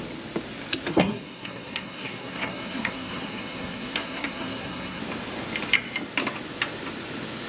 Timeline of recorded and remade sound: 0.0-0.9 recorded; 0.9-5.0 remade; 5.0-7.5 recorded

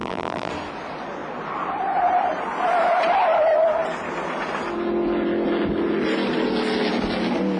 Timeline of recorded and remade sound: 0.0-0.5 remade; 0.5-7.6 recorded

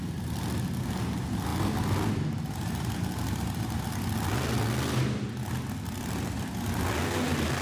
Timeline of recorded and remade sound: 0.0-7.6 recorded